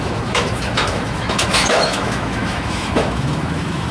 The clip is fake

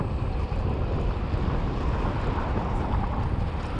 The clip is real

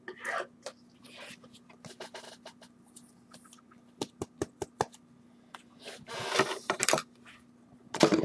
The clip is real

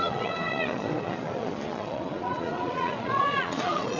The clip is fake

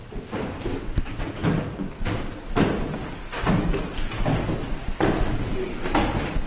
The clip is real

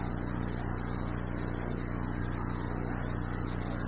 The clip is real